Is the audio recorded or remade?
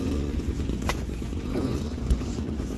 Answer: remade